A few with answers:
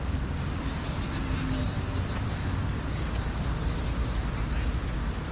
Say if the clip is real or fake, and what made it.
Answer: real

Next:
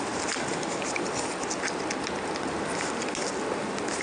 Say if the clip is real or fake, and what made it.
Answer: real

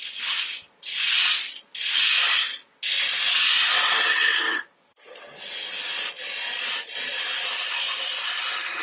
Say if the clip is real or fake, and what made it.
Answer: real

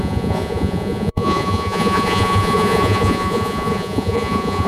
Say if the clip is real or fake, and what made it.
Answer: fake, vocoder, Vocos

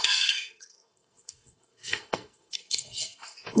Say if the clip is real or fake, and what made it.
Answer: fake, codec, SNAC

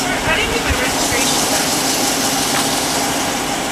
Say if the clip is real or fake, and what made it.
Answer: real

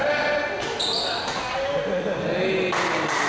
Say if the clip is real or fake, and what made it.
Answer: real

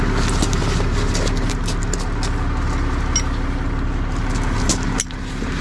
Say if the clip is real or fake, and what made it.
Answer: real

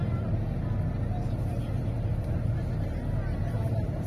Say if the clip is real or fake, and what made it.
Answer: real